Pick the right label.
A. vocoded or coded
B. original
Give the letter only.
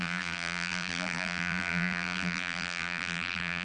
A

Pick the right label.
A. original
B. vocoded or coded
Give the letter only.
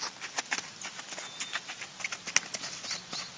A